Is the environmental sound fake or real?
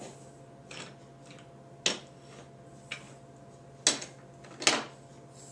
real